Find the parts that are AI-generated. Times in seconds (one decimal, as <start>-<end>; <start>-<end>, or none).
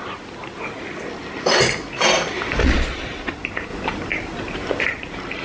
2.6-3.3